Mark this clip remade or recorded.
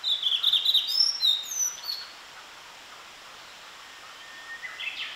recorded